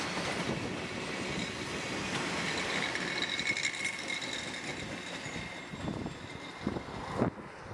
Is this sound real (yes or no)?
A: yes